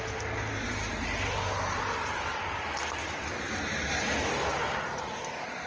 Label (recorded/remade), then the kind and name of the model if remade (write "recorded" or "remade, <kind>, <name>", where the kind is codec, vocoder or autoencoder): recorded